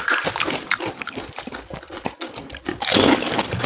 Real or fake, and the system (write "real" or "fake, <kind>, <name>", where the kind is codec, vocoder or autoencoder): real